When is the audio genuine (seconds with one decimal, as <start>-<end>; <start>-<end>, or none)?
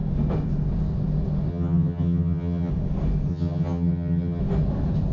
0.0-1.5; 2.7-3.3; 4.4-5.1